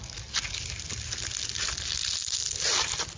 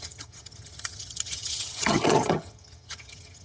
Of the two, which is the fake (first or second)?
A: second